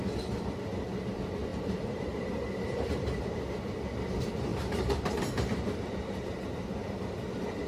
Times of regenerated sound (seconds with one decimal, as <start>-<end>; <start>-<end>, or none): 1.5-3.2; 4.5-7.3